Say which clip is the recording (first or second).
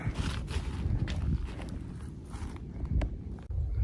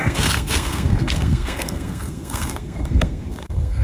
first